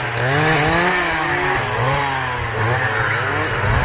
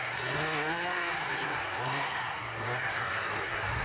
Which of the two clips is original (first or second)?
first